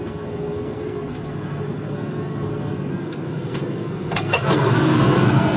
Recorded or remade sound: remade